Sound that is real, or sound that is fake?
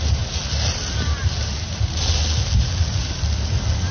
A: real